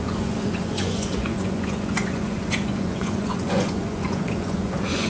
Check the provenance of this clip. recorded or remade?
remade